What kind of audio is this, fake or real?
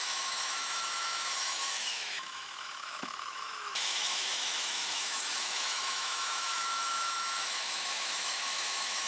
fake